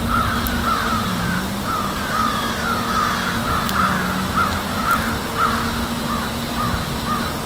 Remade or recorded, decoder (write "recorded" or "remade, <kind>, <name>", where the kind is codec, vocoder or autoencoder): recorded